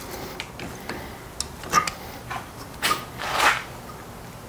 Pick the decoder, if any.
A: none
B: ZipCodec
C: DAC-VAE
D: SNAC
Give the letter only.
A